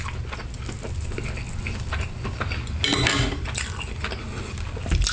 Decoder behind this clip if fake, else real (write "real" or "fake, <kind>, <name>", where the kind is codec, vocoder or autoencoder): real